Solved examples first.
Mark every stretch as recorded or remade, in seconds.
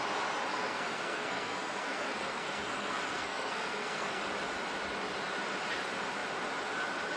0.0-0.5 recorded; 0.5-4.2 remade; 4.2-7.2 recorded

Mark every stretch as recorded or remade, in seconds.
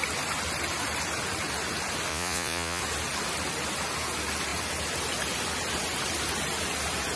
0.0-2.1 recorded; 2.1-2.8 remade; 2.8-7.2 recorded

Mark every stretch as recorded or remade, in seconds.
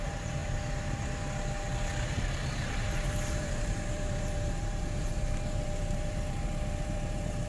0.0-0.4 remade; 0.4-2.1 recorded; 2.1-7.5 remade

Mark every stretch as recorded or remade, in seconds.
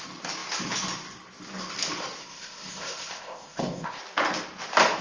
0.0-2.2 recorded; 2.2-4.0 remade; 4.0-5.0 recorded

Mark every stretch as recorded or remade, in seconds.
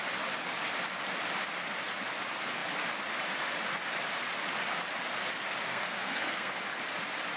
0.0-5.7 recorded; 5.7-6.5 remade; 6.5-7.4 recorded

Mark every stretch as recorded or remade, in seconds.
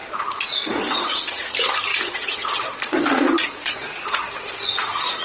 0.0-1.5 remade; 1.5-1.9 recorded; 1.9-5.2 remade